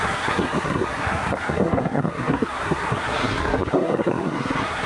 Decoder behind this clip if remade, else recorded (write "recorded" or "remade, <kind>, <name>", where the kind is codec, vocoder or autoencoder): remade, codec, SNAC